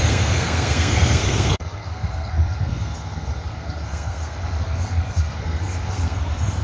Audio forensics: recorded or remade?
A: remade